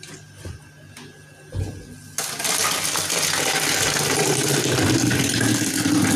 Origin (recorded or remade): recorded